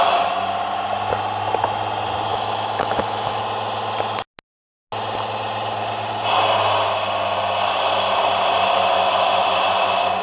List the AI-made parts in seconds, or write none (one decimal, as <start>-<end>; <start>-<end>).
2.3-3.4